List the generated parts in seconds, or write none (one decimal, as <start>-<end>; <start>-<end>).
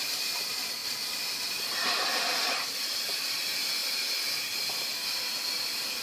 0.8-2.8